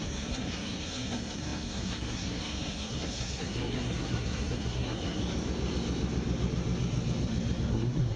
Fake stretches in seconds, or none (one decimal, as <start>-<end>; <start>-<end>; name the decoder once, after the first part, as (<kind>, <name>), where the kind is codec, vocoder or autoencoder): 0.0-5.2 (codec, SNAC); 7.7-8.2